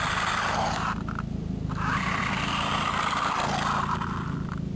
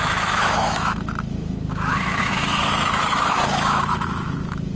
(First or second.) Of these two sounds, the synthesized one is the second